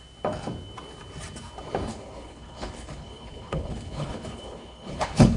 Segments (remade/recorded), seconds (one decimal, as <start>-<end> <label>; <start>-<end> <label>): 0.0-1.9 recorded; 1.9-5.4 remade